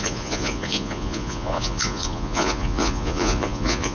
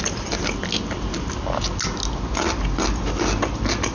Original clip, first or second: second